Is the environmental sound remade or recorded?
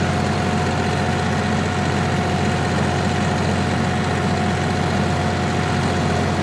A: recorded